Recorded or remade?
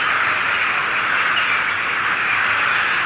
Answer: recorded